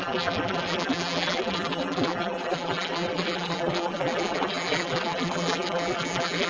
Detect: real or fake fake